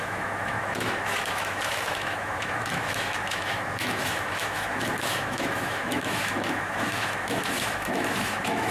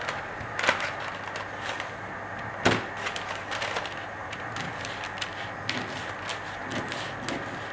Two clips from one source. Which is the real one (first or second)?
second